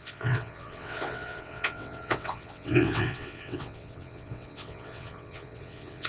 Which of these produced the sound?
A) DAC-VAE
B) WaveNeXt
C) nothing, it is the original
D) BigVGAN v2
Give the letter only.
B